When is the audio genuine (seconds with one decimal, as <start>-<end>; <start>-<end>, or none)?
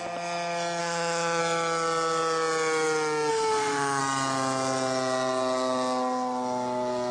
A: 0.0-0.8; 1.4-3.3; 4.0-7.1